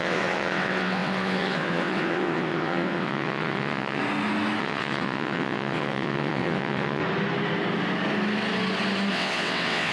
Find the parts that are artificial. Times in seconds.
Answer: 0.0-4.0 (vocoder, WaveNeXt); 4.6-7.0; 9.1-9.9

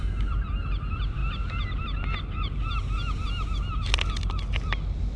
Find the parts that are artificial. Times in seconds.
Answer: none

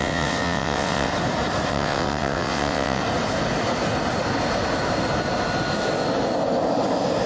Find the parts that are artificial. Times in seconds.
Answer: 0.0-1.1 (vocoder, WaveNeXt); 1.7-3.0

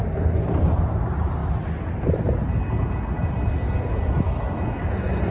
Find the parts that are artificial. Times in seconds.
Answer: none

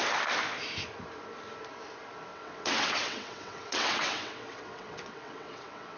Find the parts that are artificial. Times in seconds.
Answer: 2.3-6.0 (vocoder, WaveNeXt)

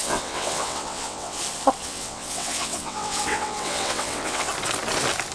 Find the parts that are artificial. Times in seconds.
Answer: 0.0-1.4 (vocoder, WaveNeXt); 1.8-4.5

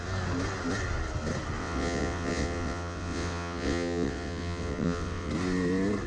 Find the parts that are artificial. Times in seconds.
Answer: 1.6-5.3 (vocoder, WaveNeXt)

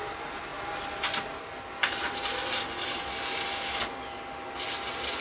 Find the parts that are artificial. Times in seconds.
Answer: none